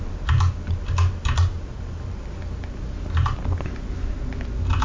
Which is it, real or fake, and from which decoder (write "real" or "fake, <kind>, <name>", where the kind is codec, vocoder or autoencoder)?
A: real